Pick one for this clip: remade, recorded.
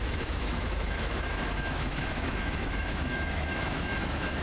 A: remade